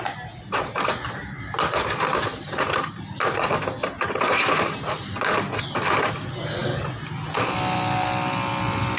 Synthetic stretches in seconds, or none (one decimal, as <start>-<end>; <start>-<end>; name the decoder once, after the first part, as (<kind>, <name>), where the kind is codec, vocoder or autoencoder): none